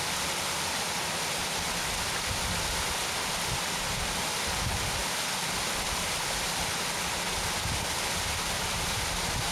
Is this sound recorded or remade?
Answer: recorded